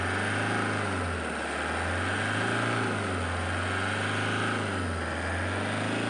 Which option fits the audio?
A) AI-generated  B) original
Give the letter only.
B